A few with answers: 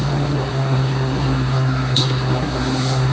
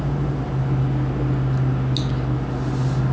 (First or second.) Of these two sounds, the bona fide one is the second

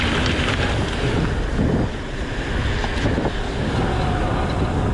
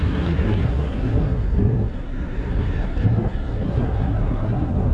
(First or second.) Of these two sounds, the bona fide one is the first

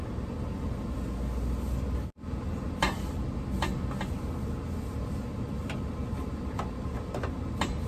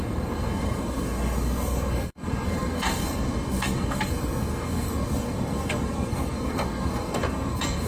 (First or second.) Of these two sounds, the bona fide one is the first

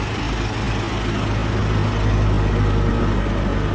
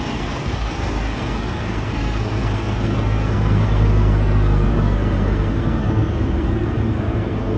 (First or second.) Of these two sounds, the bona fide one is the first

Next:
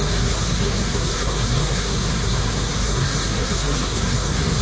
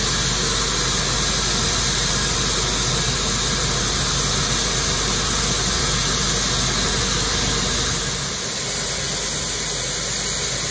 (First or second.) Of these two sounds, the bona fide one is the second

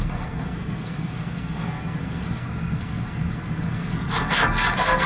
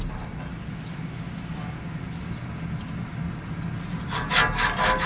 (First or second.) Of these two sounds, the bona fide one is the second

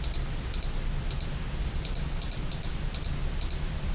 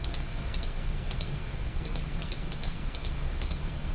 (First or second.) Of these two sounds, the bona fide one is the first